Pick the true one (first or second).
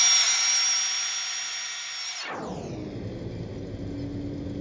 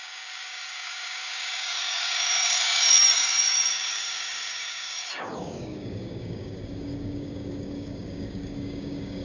first